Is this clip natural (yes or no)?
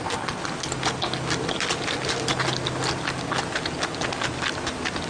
yes